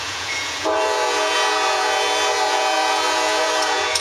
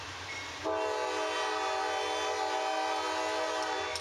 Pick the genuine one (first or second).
second